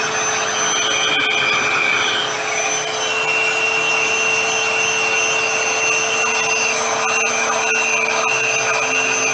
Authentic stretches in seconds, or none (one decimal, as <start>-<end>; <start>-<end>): 0.0-9.3